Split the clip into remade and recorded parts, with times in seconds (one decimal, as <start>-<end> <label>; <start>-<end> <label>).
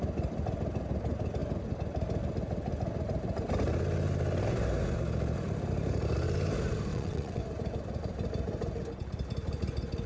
0.0-6.9 recorded; 6.9-7.4 remade; 7.4-10.1 recorded